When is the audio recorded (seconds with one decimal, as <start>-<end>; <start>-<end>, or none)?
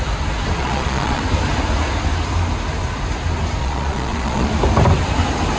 0.0-0.6; 1.2-3.6; 4.5-5.6